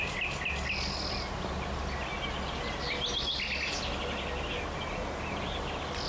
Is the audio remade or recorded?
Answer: recorded